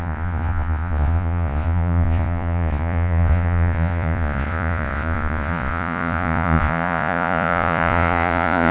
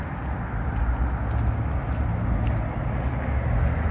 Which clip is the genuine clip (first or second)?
second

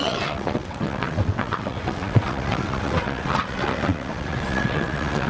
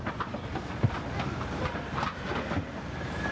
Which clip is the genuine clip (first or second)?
second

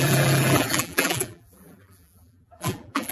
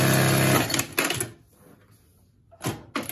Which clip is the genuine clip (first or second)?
second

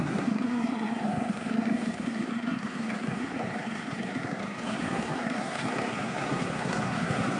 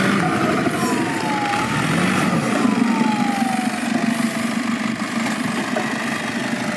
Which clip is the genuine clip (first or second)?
second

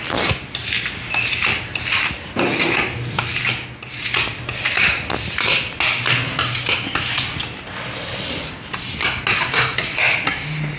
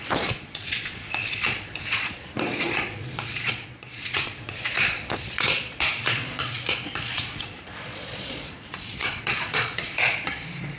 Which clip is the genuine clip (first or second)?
first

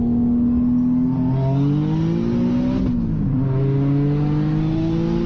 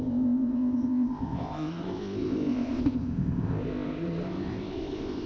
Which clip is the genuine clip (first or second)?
first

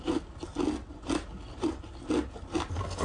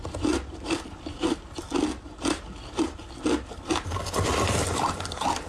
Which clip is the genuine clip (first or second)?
first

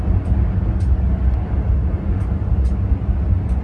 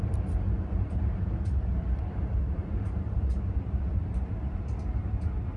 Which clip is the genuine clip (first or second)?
first